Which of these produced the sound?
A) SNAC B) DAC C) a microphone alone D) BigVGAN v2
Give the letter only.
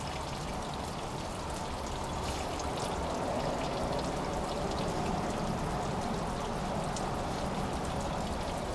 D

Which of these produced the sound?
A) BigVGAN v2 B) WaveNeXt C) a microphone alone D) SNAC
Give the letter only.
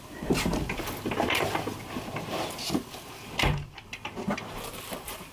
A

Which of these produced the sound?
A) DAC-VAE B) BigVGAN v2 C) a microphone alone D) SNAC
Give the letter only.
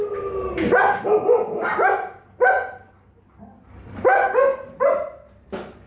C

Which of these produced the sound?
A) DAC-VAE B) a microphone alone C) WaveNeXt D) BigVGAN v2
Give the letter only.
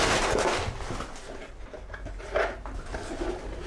B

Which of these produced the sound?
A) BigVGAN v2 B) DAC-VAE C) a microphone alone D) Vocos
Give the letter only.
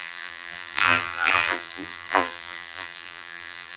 A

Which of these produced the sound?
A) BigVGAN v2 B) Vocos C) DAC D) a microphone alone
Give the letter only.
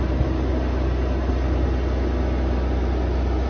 D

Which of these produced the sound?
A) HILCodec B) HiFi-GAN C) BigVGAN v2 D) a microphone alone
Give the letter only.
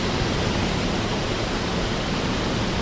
D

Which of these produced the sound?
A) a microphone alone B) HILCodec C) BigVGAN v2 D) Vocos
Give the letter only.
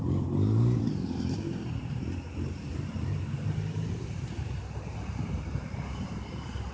C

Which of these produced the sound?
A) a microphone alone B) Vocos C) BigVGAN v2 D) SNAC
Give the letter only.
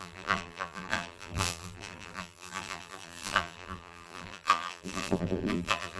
C